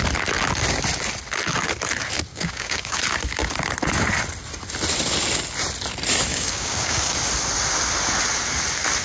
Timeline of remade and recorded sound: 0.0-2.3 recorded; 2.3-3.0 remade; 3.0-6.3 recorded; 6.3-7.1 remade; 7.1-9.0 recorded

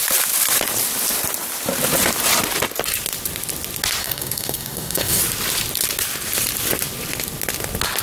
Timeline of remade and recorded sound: 0.0-4.0 recorded; 4.0-5.2 remade; 5.2-8.0 recorded

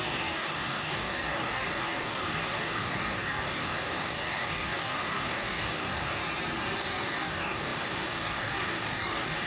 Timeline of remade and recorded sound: 0.0-6.2 remade; 6.2-6.8 recorded; 6.8-9.5 remade

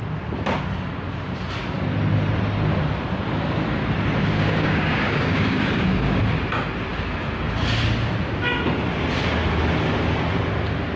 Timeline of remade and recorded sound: 0.0-4.2 recorded; 4.2-6.2 remade; 6.2-11.0 recorded